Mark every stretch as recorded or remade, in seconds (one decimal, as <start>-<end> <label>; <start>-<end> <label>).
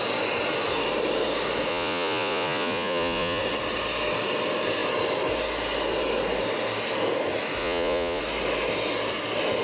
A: 0.0-1.7 recorded; 1.7-3.4 remade; 3.4-7.6 recorded; 7.6-8.2 remade; 8.2-9.6 recorded